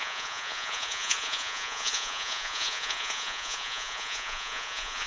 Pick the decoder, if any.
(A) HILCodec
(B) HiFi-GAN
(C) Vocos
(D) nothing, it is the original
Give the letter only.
C